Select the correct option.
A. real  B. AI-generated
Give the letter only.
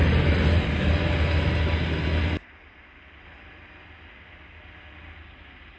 A